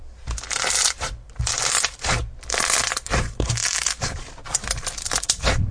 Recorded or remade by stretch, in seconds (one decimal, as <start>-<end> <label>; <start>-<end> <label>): 0.0-0.8 recorded; 0.8-2.2 remade; 2.2-3.2 recorded; 3.2-5.7 remade